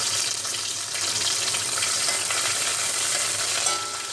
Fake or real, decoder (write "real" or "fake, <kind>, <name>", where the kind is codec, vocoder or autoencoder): real